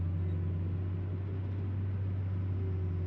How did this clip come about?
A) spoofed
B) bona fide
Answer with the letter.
B